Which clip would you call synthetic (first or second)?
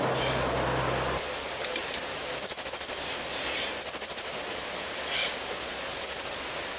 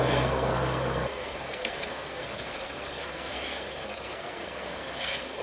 second